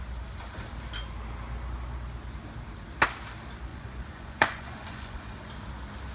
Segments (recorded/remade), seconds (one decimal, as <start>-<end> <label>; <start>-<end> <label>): 0.0-3.7 recorded; 3.7-5.5 remade; 5.5-6.1 recorded